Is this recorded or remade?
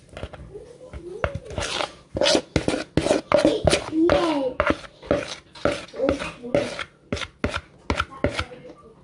recorded